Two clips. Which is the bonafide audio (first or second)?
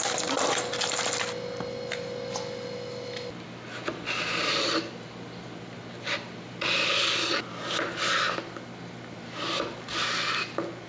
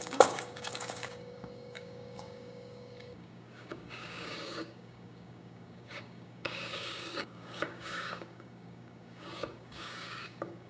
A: first